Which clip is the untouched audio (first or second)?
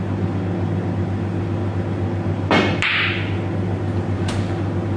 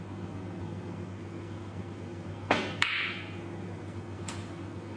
first